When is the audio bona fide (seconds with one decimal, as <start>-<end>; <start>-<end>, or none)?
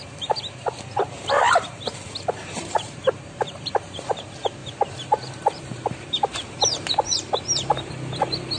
0.0-2.4; 4.1-4.6; 7.9-8.6